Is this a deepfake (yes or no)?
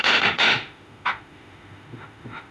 yes